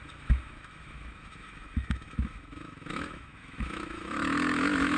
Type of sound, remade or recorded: remade